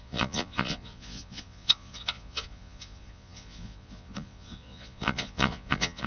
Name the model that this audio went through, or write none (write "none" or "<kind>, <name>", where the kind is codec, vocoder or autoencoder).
vocoder, Vocos